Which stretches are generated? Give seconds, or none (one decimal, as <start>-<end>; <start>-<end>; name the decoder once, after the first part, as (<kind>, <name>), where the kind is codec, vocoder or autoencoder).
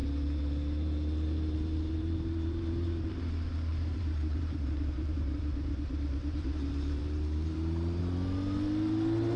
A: 0.0-3.1 (vocoder, BigVGAN v2); 3.7-8.0